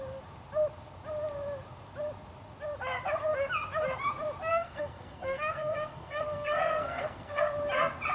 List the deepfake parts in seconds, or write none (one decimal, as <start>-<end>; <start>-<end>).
4.5-7.4